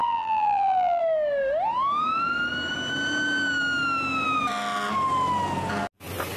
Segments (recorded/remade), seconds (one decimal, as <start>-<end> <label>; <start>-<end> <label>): 0.0-1.0 remade; 1.0-6.4 recorded